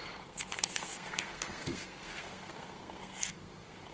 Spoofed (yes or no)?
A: yes